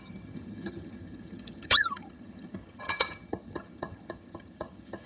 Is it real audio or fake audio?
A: fake